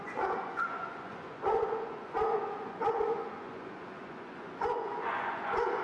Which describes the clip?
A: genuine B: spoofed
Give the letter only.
B